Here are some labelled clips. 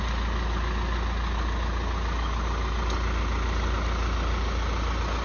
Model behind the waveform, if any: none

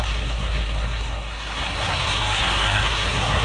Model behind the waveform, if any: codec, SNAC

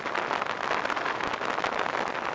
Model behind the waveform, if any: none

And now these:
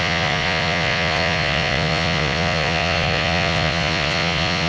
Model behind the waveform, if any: vocoder, Vocos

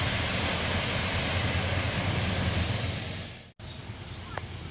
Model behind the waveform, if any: none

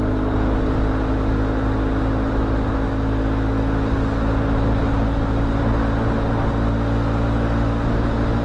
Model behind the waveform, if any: none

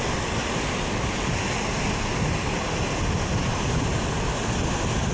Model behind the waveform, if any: none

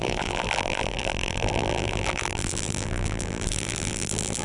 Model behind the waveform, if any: vocoder, BigVGAN v2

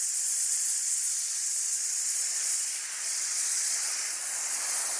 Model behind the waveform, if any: vocoder, Vocos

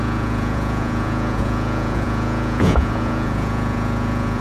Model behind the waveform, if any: vocoder, Vocos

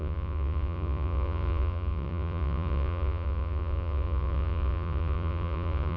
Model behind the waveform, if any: vocoder, Vocos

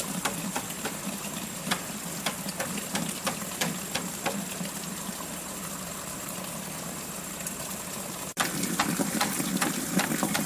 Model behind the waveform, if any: vocoder, BigVGAN v2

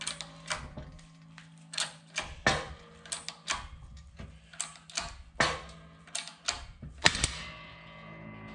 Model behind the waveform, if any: none